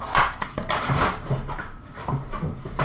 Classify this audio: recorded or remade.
remade